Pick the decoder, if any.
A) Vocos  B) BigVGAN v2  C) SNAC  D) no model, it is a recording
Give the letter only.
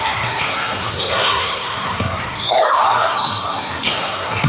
C